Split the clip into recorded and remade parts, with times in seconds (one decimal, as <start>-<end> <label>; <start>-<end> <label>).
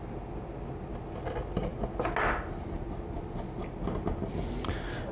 0.0-5.1 recorded